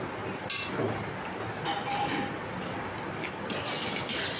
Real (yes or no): yes